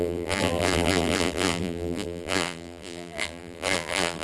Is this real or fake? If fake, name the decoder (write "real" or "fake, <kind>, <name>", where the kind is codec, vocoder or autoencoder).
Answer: fake, vocoder, BigVGAN v2